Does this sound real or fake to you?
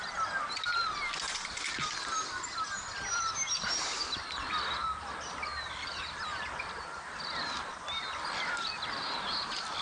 real